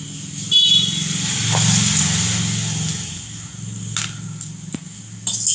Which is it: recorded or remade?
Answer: recorded